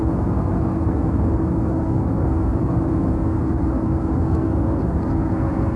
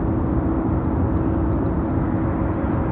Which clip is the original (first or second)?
second